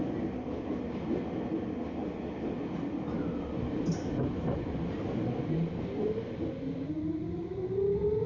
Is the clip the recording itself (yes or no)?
yes